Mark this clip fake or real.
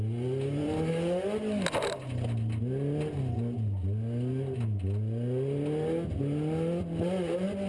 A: real